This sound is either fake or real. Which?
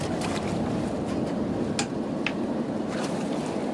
real